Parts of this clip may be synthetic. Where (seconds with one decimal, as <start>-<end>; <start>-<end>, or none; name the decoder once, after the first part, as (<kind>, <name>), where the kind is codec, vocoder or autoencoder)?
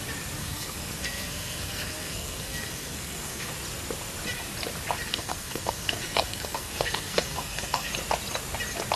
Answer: 0.4-3.5 (codec, SNAC); 5.1-7.9